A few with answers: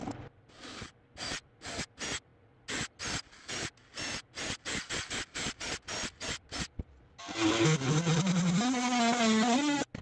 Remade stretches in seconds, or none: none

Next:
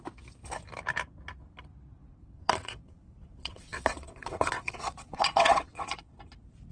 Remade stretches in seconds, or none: 2.0-6.0